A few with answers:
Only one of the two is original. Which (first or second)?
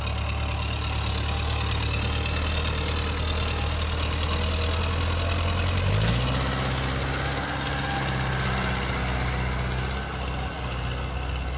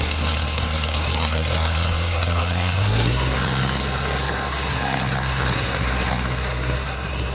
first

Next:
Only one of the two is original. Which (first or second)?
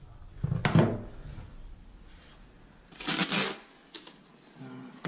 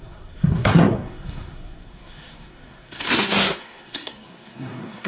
first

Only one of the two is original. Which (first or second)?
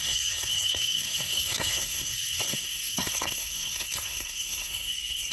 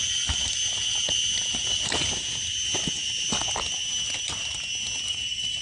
second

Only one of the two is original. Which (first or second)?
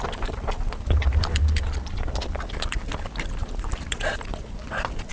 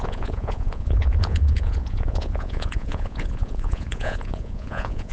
first